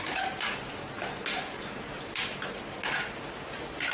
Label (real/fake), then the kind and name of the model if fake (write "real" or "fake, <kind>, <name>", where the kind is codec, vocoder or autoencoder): real